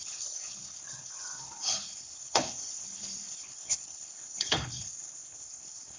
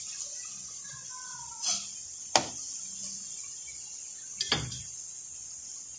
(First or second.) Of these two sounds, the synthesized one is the first